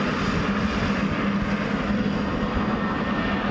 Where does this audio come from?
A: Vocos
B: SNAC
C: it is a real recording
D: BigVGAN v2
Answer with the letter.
C